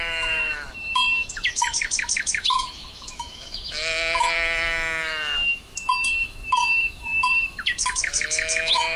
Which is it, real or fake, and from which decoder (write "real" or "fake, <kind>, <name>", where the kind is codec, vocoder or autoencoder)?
fake, autoencoder, DAC-VAE